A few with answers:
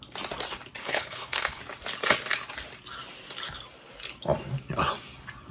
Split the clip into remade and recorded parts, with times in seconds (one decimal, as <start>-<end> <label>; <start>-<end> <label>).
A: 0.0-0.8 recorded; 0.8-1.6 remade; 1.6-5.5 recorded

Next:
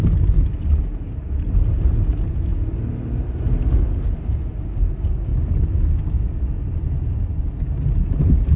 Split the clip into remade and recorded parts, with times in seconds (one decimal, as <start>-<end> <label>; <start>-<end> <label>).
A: 0.0-8.6 recorded

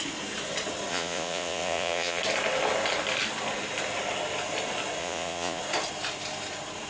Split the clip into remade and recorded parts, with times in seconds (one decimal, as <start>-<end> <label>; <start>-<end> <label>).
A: 0.0-0.9 recorded; 0.9-2.2 remade; 2.2-5.0 recorded; 5.0-5.6 remade; 5.6-6.9 recorded

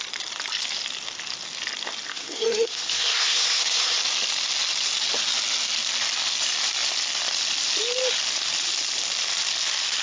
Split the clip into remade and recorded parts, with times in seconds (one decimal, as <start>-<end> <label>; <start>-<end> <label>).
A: 0.0-2.1 recorded; 2.1-4.0 remade; 4.0-10.0 recorded

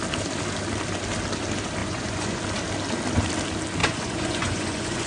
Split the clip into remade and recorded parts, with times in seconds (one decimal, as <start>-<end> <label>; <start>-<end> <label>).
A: 0.0-1.8 recorded; 1.8-2.4 remade; 2.4-3.8 recorded; 3.8-5.1 remade

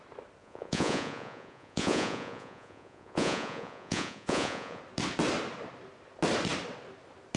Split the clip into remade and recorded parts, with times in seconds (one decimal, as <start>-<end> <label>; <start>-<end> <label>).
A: 0.0-0.4 recorded; 0.4-4.8 remade; 4.8-7.4 recorded

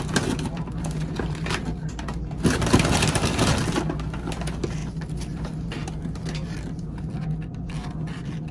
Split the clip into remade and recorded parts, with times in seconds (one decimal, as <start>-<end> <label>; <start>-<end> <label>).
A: 0.0-8.5 recorded